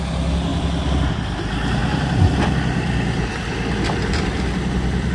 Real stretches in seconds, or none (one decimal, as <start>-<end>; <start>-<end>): 0.0-0.5; 1.1-1.8